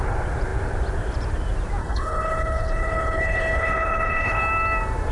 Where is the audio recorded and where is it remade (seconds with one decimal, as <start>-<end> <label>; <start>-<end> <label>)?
0.0-1.8 recorded; 1.8-4.4 remade; 4.4-5.1 recorded